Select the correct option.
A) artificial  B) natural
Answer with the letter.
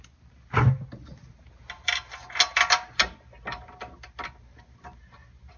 B